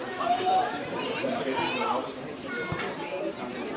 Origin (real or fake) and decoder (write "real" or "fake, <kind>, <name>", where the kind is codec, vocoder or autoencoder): fake, vocoder, BigVGAN v2